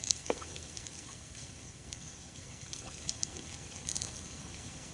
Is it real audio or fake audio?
fake